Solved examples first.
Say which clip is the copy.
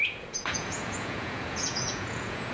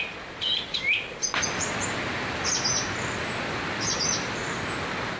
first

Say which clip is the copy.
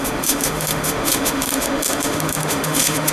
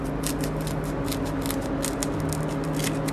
first